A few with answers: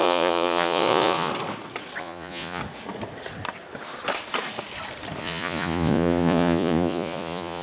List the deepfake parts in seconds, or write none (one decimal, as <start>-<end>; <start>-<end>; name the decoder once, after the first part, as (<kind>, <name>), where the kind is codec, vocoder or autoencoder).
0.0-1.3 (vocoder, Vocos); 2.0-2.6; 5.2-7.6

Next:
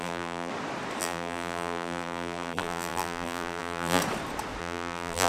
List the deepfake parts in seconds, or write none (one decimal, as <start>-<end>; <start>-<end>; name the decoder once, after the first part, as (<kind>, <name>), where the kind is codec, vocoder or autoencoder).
0.0-0.5 (vocoder, BigVGAN v2); 1.0-4.0; 4.6-5.3

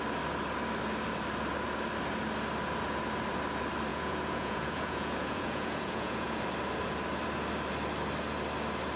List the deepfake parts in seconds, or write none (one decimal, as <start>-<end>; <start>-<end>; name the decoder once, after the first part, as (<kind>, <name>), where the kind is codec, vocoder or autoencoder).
3.9-6.4 (vocoder, Vocos)